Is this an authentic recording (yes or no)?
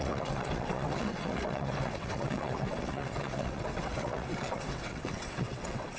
no